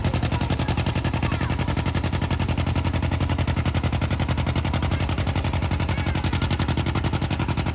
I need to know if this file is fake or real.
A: real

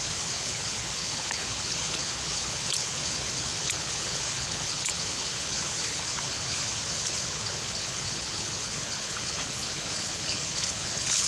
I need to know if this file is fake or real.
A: fake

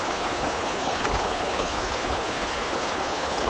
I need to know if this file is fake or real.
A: fake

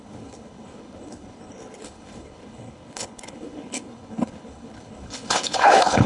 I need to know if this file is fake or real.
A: fake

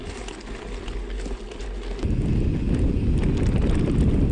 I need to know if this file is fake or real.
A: real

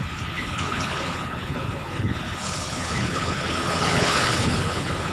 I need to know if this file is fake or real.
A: fake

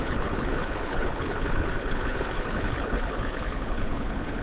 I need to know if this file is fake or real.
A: fake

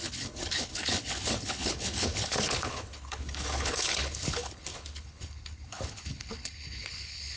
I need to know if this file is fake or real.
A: fake